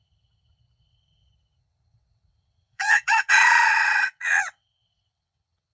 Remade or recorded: remade